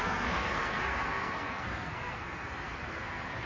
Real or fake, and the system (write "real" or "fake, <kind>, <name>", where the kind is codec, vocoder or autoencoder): fake, codec, SNAC